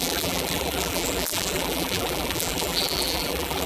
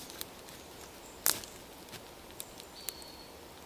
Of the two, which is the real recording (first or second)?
second